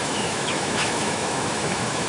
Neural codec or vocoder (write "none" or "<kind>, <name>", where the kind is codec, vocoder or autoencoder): autoencoder, DAC-VAE